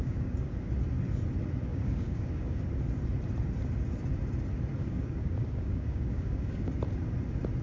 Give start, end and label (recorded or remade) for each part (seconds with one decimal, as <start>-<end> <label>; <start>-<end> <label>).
0.0-0.7 remade; 0.7-1.7 recorded; 1.7-2.6 remade; 2.6-4.8 recorded; 4.8-6.7 remade; 6.7-7.6 recorded

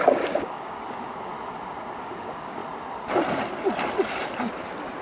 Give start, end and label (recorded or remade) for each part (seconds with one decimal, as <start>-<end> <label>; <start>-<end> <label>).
0.0-1.3 remade; 1.3-2.0 recorded; 2.0-2.6 remade; 2.6-5.0 recorded